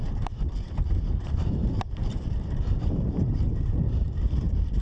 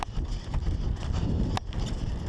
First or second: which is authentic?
second